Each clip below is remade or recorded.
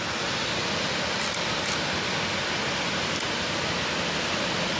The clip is recorded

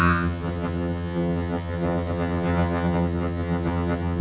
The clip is remade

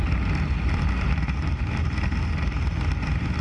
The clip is recorded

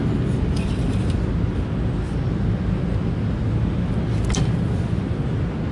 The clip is recorded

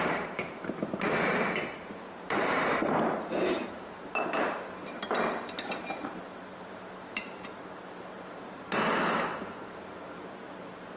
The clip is remade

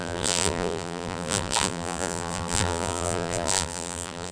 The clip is remade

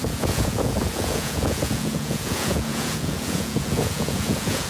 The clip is remade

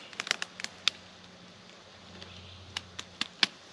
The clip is recorded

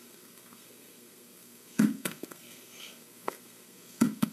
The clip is remade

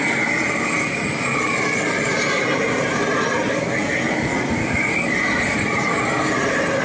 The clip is recorded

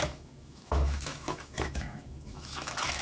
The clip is remade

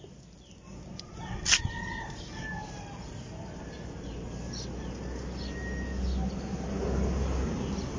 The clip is recorded